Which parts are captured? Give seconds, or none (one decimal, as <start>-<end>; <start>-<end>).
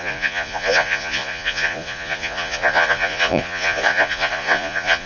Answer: none